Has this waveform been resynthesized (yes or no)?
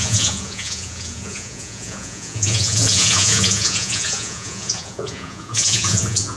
yes